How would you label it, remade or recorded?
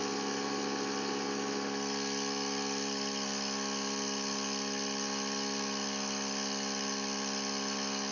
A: recorded